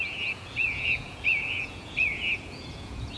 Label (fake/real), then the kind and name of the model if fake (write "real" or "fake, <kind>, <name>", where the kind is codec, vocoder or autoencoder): fake, vocoder, Vocos